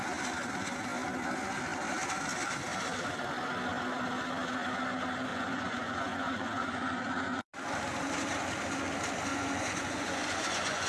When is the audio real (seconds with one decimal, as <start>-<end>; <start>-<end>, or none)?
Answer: 0.0-5.3; 7.5-9.3